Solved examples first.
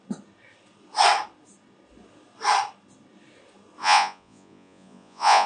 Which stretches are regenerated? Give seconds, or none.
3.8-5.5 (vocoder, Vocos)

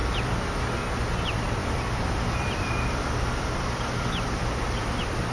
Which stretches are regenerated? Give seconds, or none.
0.0-0.6 (vocoder, BigVGAN v2); 1.6-4.8